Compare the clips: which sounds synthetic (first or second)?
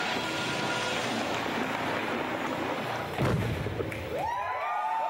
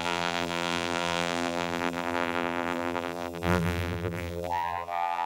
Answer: second